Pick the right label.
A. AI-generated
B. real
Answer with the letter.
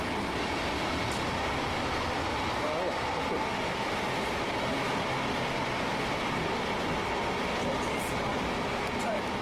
B